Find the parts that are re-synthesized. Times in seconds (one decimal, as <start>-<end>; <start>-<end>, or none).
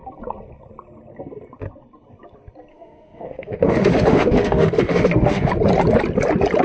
2.7-5.5